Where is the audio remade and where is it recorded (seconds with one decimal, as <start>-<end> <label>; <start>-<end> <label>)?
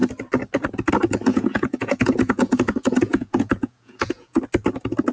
0.0-1.3 recorded; 1.3-4.4 remade; 4.4-5.1 recorded